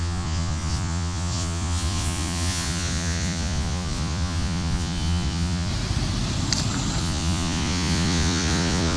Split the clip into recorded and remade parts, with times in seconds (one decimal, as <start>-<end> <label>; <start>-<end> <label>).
0.0-5.7 remade; 5.7-7.0 recorded; 7.0-9.0 remade